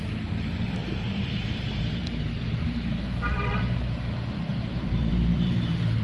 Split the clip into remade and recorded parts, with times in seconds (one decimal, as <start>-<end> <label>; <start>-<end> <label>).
0.0-0.8 recorded; 0.8-3.6 remade; 3.6-4.5 recorded; 4.5-5.6 remade; 5.6-6.0 recorded